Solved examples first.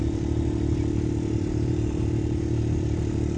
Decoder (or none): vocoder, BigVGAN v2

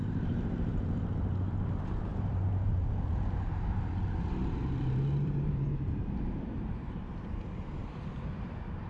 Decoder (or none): vocoder, BigVGAN v2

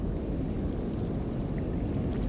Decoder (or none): none